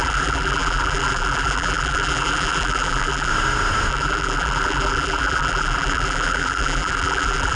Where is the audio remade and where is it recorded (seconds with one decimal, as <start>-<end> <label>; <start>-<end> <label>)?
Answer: 0.0-3.3 remade; 3.3-3.9 recorded; 3.9-7.6 remade